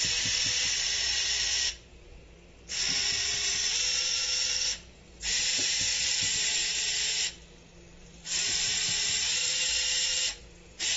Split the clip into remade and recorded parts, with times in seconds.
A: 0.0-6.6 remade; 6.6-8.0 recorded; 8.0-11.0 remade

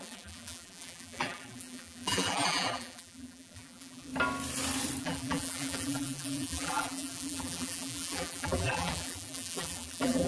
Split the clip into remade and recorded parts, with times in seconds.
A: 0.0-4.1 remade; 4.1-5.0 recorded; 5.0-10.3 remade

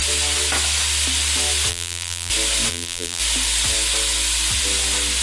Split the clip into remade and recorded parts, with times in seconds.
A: 0.0-1.7 recorded; 1.7-2.3 remade; 2.3-2.7 recorded; 2.7-3.2 remade; 3.2-5.2 recorded